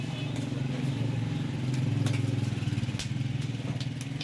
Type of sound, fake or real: real